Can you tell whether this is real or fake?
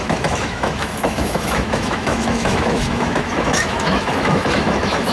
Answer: fake